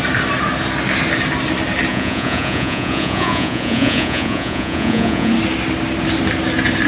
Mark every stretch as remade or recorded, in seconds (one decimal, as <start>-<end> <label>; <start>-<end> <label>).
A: 0.0-1.9 recorded; 1.9-5.3 remade; 5.3-6.9 recorded